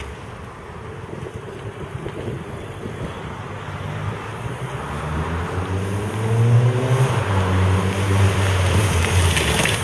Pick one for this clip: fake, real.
real